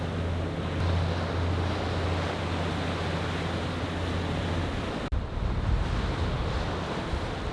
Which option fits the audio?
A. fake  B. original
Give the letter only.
B